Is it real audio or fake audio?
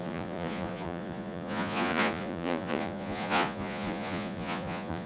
fake